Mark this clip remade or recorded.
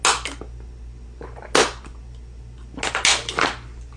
recorded